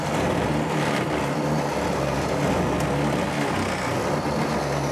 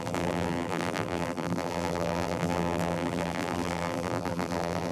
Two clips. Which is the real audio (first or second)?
first